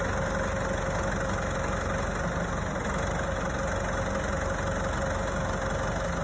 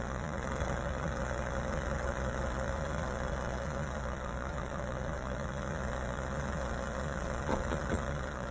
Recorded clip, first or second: first